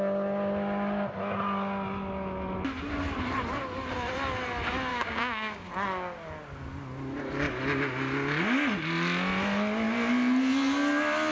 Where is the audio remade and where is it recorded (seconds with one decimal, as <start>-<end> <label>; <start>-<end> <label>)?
0.0-4.9 recorded; 4.9-5.7 remade; 5.7-11.3 recorded